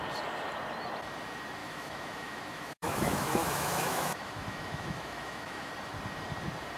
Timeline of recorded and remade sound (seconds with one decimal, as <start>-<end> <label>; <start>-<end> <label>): 0.0-1.6 recorded; 1.6-5.7 remade; 5.7-6.8 recorded